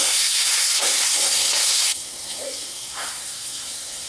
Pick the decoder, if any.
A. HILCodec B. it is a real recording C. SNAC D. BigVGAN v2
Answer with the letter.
C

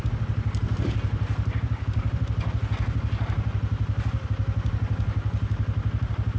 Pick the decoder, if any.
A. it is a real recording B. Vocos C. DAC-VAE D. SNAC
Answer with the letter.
A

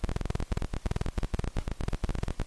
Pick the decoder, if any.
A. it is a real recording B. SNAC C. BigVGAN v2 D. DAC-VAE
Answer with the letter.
A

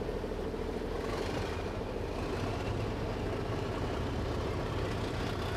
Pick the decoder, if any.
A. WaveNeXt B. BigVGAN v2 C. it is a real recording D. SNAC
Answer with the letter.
C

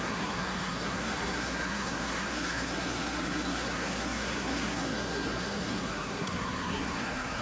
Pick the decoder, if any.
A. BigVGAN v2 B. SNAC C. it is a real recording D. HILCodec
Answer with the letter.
B